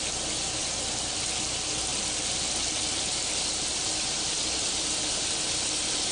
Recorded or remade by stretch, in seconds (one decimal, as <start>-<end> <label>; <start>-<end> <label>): 0.0-6.1 recorded